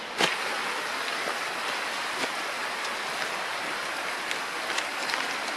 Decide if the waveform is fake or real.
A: real